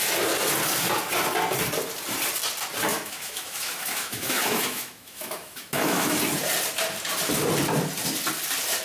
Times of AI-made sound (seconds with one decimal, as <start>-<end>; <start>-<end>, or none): 2.9-6.2